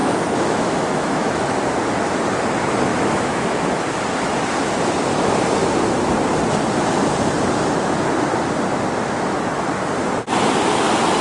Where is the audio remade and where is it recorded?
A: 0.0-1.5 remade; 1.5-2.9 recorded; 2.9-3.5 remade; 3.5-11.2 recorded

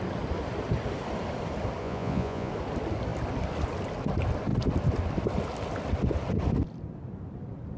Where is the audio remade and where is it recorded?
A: 0.0-1.8 recorded; 1.8-2.5 remade; 2.5-7.8 recorded

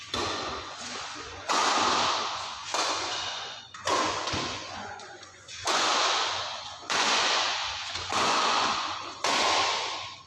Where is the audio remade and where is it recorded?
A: 0.0-1.6 remade; 1.6-2.3 recorded; 2.3-10.3 remade

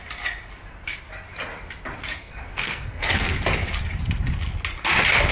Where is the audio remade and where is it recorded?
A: 0.0-2.2 recorded; 2.2-3.3 remade; 3.3-5.3 recorded

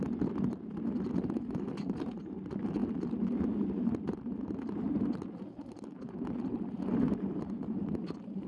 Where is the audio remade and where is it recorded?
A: 0.0-8.5 recorded

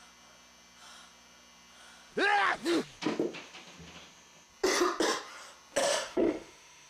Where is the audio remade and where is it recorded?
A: 0.0-5.8 recorded; 5.8-6.9 remade

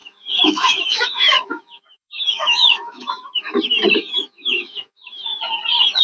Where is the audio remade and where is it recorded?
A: 0.0-3.6 remade; 3.6-4.0 recorded; 4.0-5.4 remade; 5.4-6.0 recorded

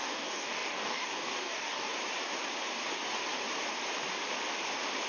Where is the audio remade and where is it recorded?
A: 0.0-1.9 remade; 1.9-5.1 recorded